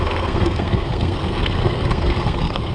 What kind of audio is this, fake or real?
fake